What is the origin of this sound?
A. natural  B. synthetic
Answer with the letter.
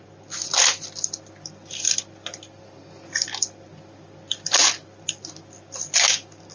A